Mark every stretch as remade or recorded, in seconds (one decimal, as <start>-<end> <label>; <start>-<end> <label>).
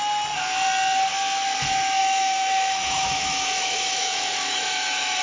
0.0-2.0 recorded; 2.0-5.2 remade